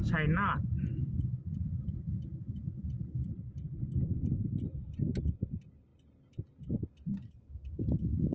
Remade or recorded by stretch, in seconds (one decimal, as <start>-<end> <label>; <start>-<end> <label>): 0.0-8.3 recorded